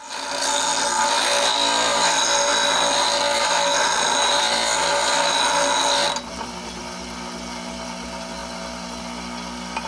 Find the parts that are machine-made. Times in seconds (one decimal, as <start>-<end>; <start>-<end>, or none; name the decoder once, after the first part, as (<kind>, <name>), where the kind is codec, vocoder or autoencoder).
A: none